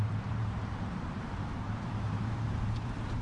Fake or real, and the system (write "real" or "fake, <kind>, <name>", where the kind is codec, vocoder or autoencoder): fake, vocoder, BigVGAN v2